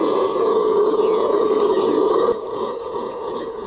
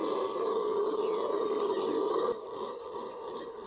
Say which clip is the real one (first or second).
second